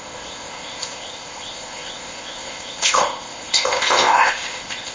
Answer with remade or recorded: remade